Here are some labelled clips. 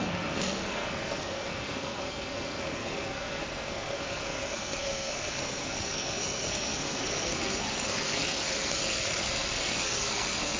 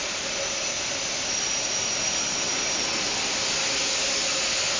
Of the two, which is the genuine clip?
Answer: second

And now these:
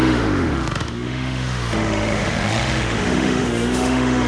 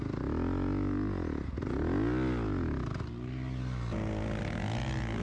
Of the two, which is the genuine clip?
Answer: second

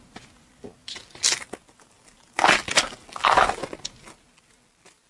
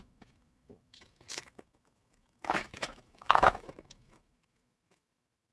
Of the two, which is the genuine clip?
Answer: first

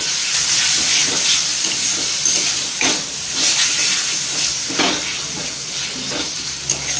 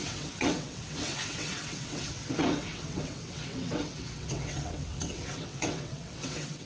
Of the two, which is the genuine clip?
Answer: first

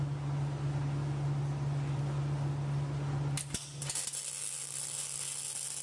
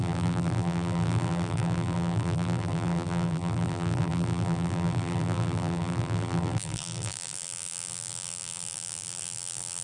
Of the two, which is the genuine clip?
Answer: first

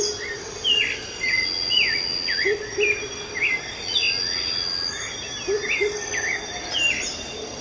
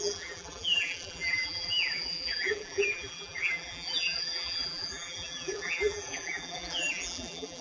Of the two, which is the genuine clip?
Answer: first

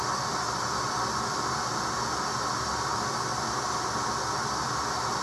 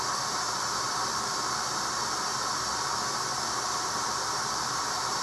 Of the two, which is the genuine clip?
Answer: first